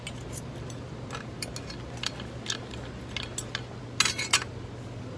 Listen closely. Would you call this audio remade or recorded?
recorded